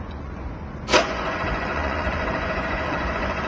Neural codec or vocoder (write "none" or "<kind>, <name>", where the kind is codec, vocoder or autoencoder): vocoder, Vocos